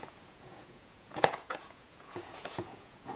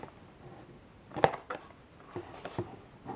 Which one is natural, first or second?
second